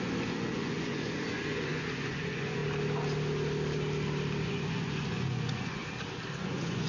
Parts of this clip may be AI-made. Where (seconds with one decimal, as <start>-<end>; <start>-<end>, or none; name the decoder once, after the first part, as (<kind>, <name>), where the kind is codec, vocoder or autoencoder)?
0.0-2.6 (vocoder, Vocos); 4.4-5.8; 6.3-6.9